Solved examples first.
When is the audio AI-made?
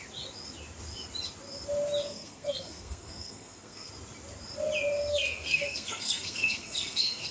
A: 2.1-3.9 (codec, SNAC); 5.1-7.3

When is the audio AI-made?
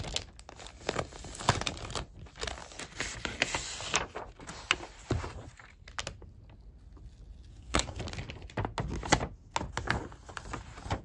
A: 7.5-8.0 (codec, SNAC)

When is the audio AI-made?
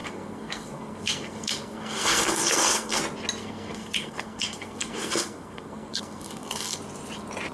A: 0.0-3.0 (codec, SNAC); 3.4-6.8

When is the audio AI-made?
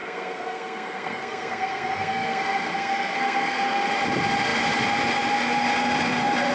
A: 0.0-3.9 (codec, SNAC)